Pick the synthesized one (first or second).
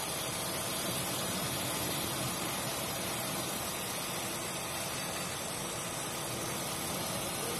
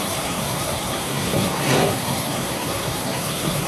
second